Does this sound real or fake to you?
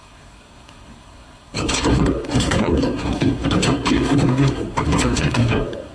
fake